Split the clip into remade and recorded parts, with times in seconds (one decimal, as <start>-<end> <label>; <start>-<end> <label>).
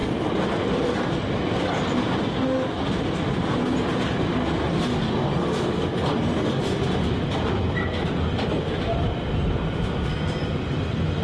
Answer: 0.0-11.2 recorded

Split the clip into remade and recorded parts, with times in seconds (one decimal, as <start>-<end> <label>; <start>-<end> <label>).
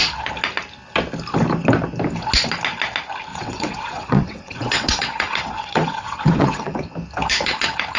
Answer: 0.0-3.3 recorded; 3.3-6.9 remade; 6.9-8.0 recorded